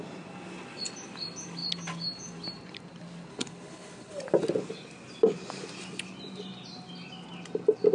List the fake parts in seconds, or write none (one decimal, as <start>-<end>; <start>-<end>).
3.3-4.2